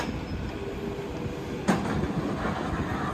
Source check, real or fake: real